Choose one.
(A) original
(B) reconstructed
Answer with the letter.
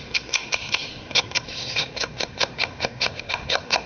B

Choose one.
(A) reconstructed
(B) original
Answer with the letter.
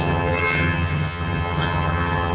A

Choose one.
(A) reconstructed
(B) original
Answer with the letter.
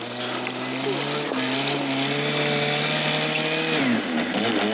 B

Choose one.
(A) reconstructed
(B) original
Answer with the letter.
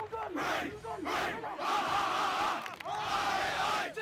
B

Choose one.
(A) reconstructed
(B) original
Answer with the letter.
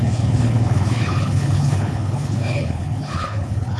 A